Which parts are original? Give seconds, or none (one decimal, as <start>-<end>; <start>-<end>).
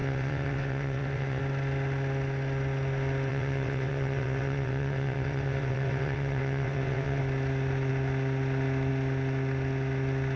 1.4-3.3; 7.2-10.4